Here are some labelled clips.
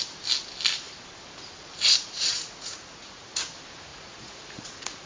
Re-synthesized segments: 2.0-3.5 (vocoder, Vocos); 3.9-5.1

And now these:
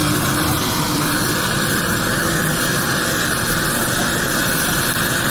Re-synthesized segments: 0.0-2.6 (vocoder, BigVGAN v2)

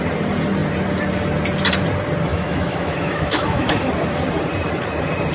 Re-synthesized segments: 2.3-3.9 (autoencoder, DAC-VAE)